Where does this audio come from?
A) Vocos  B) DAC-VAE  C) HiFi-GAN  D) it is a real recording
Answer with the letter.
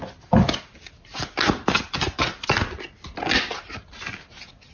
D